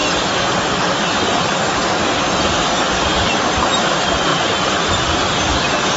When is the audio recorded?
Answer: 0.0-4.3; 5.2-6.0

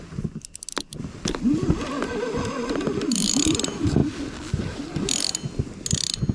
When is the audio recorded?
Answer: 0.0-6.3

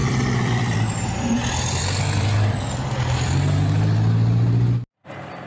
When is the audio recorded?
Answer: 3.3-5.5

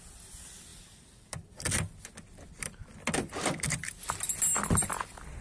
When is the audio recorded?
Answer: 0.0-5.4

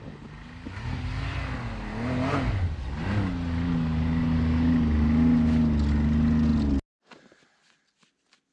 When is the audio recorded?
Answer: 0.0-8.5

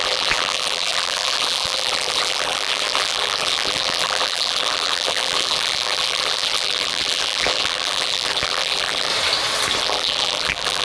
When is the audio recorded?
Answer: 9.1-9.8

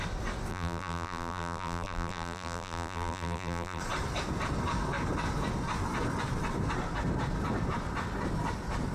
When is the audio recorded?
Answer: 0.0-0.5; 3.8-8.9